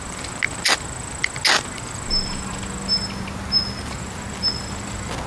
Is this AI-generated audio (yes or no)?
no